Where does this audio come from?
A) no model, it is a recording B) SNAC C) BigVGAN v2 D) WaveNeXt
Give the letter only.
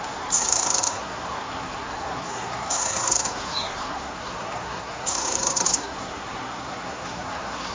B